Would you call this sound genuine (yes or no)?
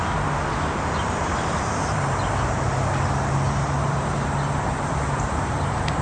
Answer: yes